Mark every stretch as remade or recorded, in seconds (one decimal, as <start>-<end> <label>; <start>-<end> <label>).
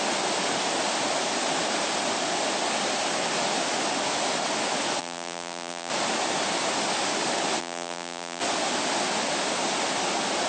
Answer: 0.0-5.0 recorded; 5.0-5.9 remade; 5.9-7.6 recorded; 7.6-8.4 remade; 8.4-10.5 recorded